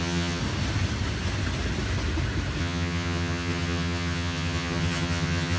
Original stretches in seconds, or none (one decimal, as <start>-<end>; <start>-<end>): 0.4-2.6